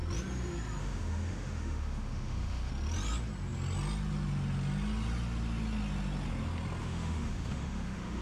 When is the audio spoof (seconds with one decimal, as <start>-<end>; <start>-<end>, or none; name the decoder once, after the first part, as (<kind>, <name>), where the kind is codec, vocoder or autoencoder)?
0.8-2.7 (autoencoder, DAC-VAE); 6.8-8.2